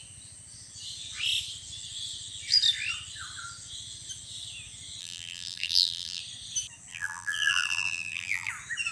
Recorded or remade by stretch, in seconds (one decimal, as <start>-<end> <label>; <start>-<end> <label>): 0.0-5.0 recorded; 5.0-6.2 remade; 6.2-6.9 recorded; 6.9-8.5 remade; 8.5-8.9 recorded